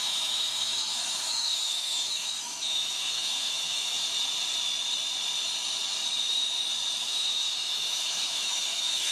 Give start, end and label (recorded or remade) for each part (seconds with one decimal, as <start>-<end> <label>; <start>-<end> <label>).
0.0-4.0 remade; 4.0-7.0 recorded; 7.0-9.1 remade